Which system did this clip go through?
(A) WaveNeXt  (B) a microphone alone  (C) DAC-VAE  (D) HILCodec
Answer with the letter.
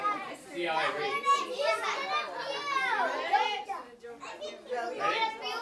B